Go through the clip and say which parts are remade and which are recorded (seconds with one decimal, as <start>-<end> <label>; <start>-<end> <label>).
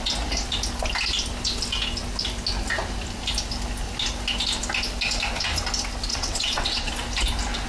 0.0-6.1 recorded; 6.1-6.9 remade; 6.9-7.7 recorded